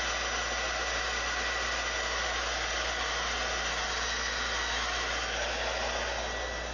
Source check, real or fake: real